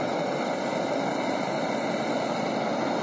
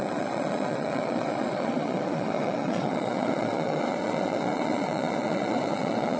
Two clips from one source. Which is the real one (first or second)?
first